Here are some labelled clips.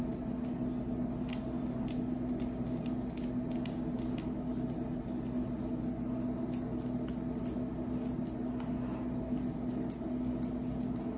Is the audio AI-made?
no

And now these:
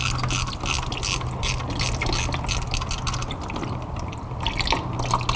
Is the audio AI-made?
no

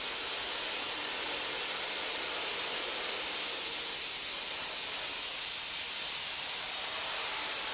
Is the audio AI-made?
no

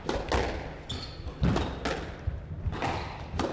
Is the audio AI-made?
no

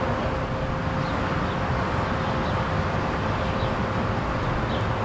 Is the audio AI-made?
no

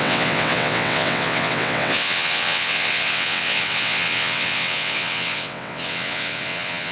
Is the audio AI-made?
yes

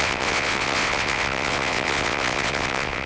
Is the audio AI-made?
yes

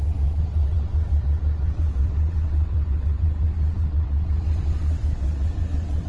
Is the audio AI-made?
yes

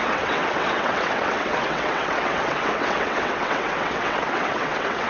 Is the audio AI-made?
yes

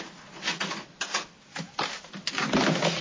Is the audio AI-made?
no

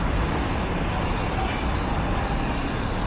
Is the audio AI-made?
no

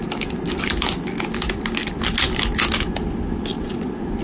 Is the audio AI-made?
no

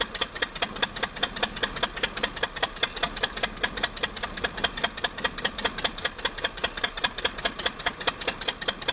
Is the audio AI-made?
no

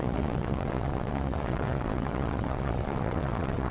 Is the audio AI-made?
yes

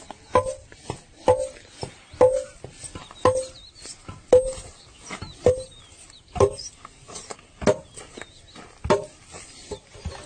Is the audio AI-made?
no